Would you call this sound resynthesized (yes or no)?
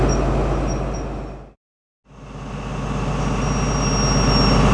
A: no